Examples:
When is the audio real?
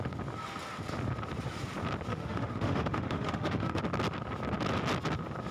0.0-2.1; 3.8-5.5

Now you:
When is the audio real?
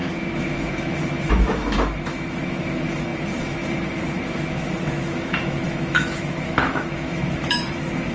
none